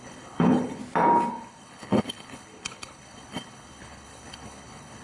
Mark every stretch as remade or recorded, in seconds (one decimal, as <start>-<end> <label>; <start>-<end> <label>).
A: 0.0-0.8 remade; 0.8-1.3 recorded; 1.3-5.0 remade